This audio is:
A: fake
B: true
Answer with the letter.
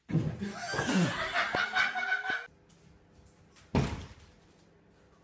B